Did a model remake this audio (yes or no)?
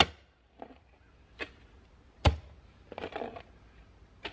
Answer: no